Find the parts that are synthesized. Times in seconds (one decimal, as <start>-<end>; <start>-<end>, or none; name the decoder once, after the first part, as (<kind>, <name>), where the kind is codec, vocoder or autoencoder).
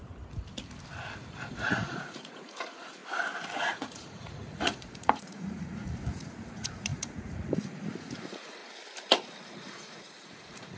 1.5-3.0 (vocoder, Vocos); 3.6-8.6; 9.5-10.8